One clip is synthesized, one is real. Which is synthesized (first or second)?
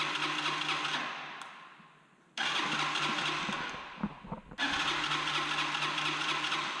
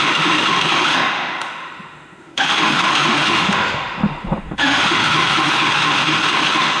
second